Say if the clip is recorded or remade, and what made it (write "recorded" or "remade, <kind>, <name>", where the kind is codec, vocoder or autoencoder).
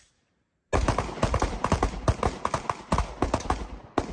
recorded